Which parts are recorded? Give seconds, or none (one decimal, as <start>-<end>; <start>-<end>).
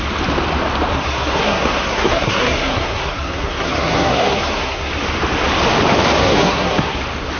0.0-0.9; 4.9-6.2; 7.0-7.4